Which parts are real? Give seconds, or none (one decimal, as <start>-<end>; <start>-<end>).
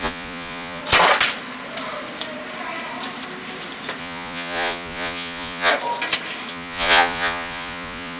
0.8-4.0; 5.7-6.5